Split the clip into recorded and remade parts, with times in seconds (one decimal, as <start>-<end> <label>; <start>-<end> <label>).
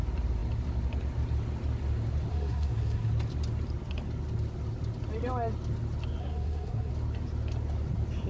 0.0-2.3 recorded; 2.3-3.1 remade; 3.1-6.2 recorded; 6.2-6.9 remade; 6.9-8.3 recorded